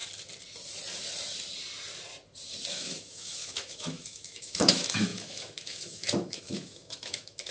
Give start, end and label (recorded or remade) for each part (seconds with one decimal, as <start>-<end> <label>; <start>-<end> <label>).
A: 0.0-2.7 recorded; 2.7-7.5 remade